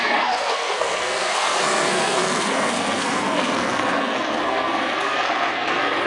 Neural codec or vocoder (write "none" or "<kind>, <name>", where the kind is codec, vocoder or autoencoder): codec, SNAC